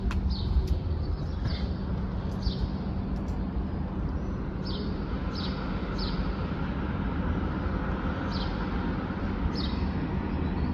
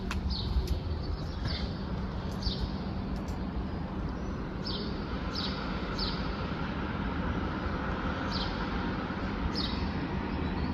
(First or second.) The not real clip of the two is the second